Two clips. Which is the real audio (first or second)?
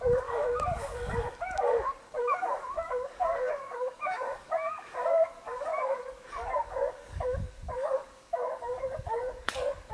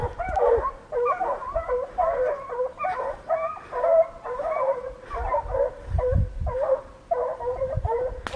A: second